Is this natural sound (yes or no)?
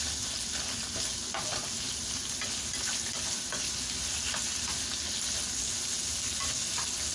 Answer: yes